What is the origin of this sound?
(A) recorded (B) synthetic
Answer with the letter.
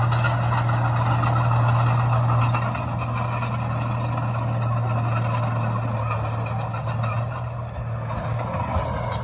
A